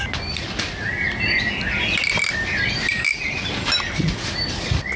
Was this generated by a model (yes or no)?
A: no